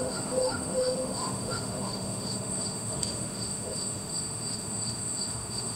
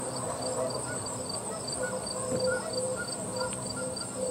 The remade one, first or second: first